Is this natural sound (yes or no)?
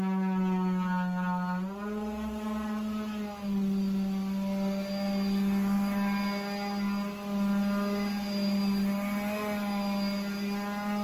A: yes